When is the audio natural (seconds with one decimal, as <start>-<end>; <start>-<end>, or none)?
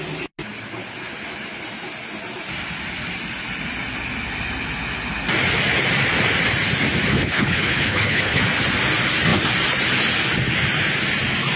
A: 0.0-7.1; 8.4-11.6